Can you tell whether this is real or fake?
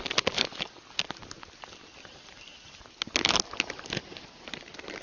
real